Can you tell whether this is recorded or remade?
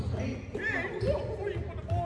recorded